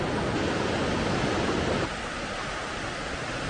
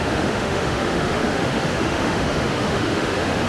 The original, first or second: first